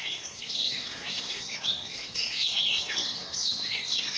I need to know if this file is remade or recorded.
remade